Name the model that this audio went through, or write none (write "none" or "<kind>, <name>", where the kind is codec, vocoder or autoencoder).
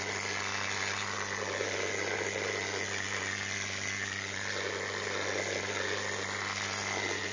none